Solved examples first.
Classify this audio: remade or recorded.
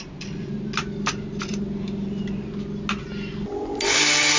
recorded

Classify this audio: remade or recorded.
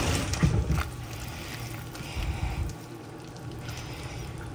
remade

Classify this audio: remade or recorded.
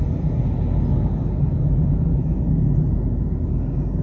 recorded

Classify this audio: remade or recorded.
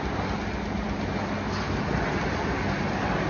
recorded